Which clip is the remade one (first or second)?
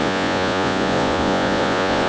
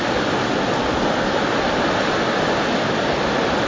first